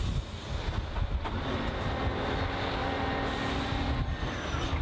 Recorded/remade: recorded